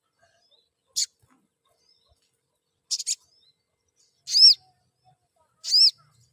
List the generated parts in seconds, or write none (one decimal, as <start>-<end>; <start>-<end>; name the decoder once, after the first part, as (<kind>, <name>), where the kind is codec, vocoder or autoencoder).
none

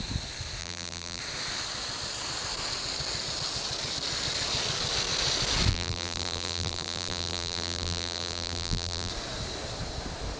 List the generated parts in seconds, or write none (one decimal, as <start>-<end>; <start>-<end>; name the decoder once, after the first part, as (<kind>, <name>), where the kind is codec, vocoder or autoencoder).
0.6-1.2 (vocoder, BigVGAN v2); 5.7-9.1

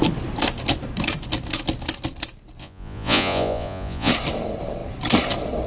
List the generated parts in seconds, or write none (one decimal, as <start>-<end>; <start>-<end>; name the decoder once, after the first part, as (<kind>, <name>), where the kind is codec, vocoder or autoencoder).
2.6-4.1 (vocoder, Vocos)

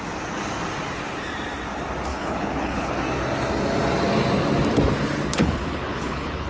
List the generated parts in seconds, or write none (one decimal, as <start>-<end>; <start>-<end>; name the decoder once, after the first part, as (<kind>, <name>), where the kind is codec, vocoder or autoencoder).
2.1-3.0 (codec, HILCodec); 5.3-6.5

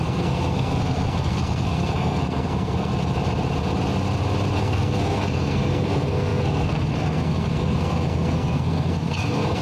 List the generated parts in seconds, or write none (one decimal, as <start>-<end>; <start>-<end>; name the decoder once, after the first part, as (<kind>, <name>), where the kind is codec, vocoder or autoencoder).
0.0-2.9 (codec, SNAC); 4.6-9.6

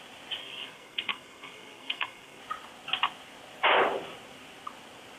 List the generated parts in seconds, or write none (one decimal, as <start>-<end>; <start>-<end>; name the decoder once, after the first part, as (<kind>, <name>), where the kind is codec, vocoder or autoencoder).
0.4-2.4 (codec, SNAC)

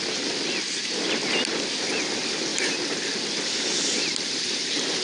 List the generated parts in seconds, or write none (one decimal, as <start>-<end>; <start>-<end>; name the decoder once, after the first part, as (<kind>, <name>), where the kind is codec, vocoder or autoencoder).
2.5-3.2 (vocoder, BigVGAN v2); 4.1-5.0